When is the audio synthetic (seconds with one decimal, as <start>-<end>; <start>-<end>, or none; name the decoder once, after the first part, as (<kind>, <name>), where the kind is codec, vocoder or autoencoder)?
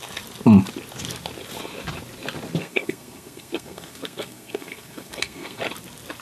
2.6-5.6 (codec, SNAC)